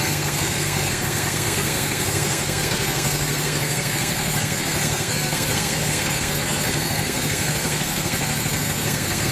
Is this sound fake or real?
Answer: fake